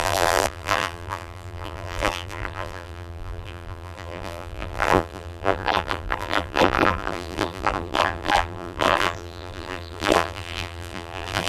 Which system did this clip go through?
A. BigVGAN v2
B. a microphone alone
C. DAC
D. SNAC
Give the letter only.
A